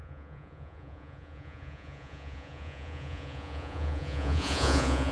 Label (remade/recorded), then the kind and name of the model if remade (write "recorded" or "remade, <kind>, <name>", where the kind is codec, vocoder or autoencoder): remade, vocoder, Vocos